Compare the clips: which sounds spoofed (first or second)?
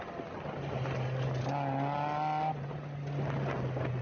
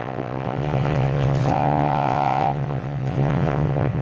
second